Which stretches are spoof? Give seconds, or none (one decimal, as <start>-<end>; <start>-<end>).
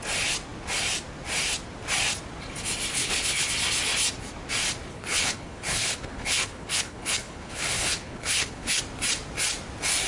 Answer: 2.9-3.5; 4.9-8.8